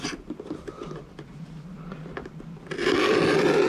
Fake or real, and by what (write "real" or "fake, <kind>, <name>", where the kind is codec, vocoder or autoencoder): real